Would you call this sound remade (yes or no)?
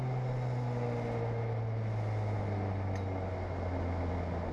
no